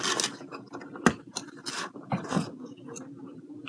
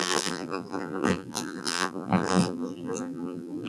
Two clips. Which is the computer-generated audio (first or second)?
second